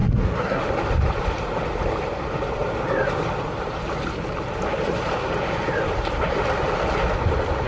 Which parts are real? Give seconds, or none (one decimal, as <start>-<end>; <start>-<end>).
0.6-7.7